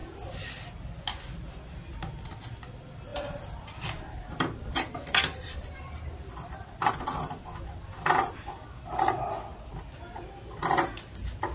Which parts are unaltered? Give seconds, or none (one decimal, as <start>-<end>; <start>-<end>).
0.5-3.1; 6.9-11.5